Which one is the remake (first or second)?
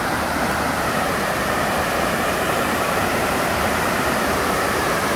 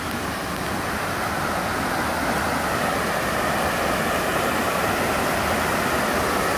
first